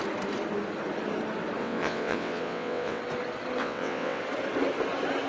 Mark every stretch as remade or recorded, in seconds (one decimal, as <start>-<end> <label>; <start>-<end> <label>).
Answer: 0.0-1.6 recorded; 1.6-3.0 remade; 3.0-3.6 recorded; 3.6-4.2 remade; 4.2-5.3 recorded

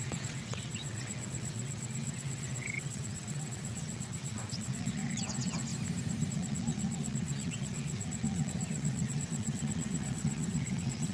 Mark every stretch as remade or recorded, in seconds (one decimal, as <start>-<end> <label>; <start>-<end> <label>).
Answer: 0.0-5.7 remade; 5.7-6.3 recorded; 6.3-11.1 remade

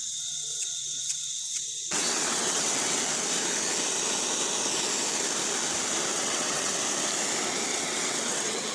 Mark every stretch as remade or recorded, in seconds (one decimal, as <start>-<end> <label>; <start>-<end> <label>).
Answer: 0.0-3.0 remade; 3.0-6.1 recorded; 6.1-6.7 remade; 6.7-7.7 recorded; 7.7-8.7 remade

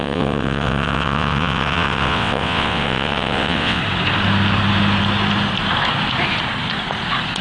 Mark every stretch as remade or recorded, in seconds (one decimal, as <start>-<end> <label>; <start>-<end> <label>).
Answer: 0.0-3.8 remade; 3.8-7.4 recorded

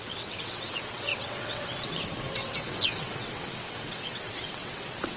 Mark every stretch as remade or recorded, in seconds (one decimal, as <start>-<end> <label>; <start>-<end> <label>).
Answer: 0.0-5.2 remade

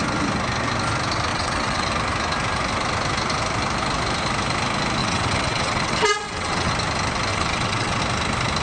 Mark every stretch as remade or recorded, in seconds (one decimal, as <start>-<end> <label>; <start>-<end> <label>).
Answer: 0.0-1.3 recorded; 1.3-1.9 remade; 1.9-5.0 recorded; 5.0-6.7 remade; 6.7-7.3 recorded; 7.3-8.0 remade; 8.0-8.6 recorded